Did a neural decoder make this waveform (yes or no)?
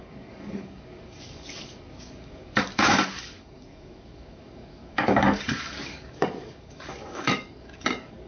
yes